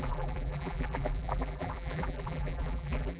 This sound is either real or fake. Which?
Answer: fake